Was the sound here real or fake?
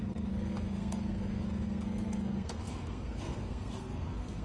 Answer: fake